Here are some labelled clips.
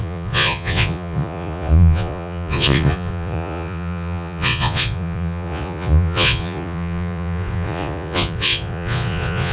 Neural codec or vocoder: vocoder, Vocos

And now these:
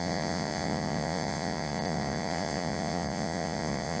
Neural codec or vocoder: vocoder, Vocos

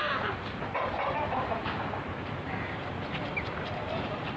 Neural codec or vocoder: vocoder, BigVGAN v2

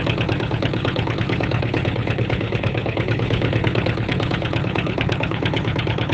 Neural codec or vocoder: codec, HILCodec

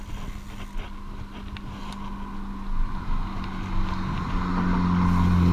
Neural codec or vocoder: none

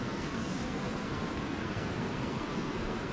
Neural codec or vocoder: codec, SNAC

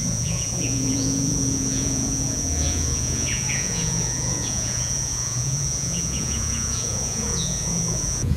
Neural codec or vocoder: vocoder, Vocos